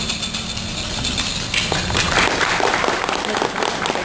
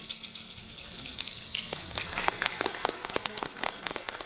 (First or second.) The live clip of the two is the first